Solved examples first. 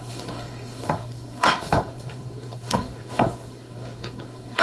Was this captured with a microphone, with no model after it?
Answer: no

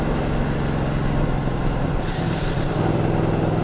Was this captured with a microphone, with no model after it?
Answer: yes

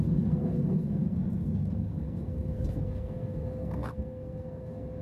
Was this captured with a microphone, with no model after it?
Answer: no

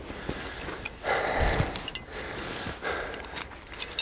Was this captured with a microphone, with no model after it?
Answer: yes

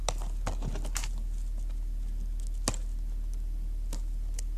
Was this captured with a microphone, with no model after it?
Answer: yes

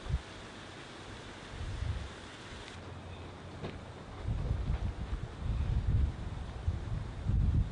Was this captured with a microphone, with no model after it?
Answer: yes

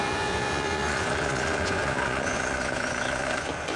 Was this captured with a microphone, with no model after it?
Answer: no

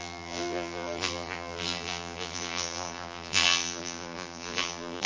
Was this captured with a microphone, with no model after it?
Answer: no